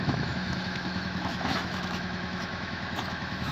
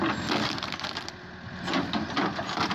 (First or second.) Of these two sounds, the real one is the second